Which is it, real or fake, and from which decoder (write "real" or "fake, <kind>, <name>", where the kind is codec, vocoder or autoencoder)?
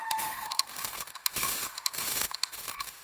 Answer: fake, autoencoder, DAC-VAE